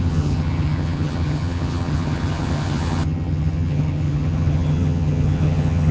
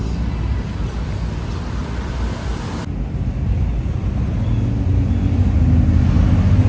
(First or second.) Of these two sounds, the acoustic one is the second